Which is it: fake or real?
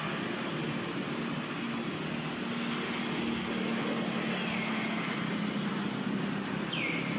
real